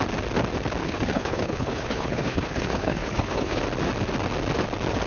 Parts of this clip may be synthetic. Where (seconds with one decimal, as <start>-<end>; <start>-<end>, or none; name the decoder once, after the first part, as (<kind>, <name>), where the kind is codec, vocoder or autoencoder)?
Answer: 0.8-3.6 (codec, HILCodec)